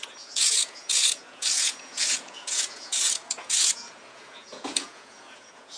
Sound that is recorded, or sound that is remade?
remade